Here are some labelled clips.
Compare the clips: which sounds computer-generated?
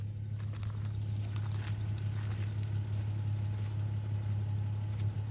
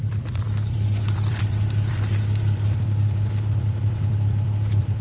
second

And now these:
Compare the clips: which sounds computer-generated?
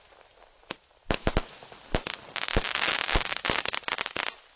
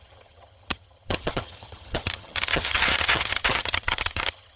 second